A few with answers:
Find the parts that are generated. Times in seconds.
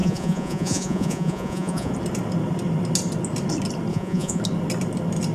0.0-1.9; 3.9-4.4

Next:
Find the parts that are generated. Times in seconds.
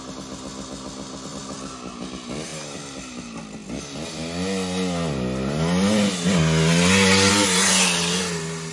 none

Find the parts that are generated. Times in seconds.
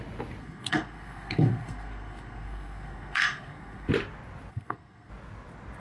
0.4-3.9; 4.5-5.1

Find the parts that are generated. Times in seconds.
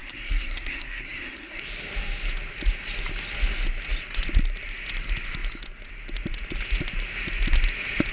0.0-1.6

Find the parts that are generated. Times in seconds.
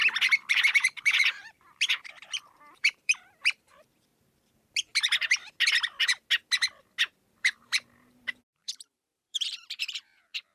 0.5-4.1; 7.3-10.5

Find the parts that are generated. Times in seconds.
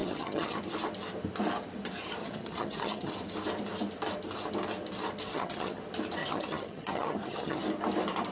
0.0-0.6; 2.2-3.1; 5.3-5.8; 6.2-7.6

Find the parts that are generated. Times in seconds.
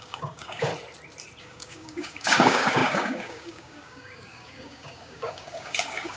0.0-0.7; 1.4-6.2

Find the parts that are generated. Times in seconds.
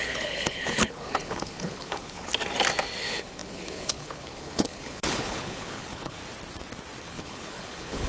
0.0-2.3; 3.0-6.2; 7.0-8.1